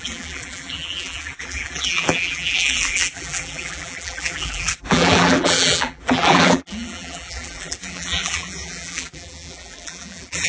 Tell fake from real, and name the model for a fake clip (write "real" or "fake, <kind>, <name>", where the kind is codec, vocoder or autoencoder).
fake, vocoder, BigVGAN v2